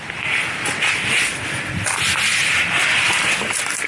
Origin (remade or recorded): recorded